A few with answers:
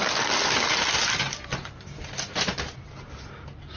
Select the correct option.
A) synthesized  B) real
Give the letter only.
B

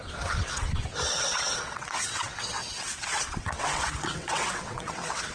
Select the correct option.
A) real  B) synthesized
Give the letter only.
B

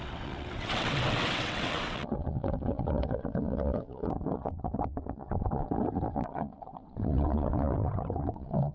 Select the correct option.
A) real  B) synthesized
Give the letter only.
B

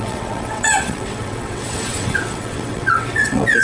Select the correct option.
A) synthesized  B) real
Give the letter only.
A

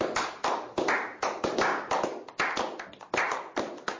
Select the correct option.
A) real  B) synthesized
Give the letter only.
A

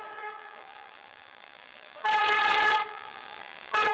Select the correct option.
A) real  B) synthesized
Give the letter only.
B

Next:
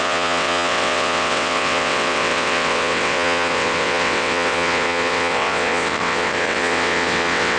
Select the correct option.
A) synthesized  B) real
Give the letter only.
A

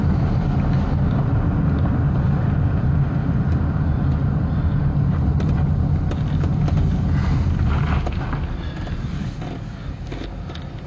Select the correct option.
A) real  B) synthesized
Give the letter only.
A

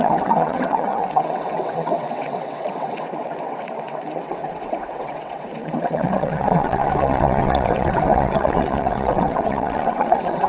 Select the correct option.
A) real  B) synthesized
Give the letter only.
B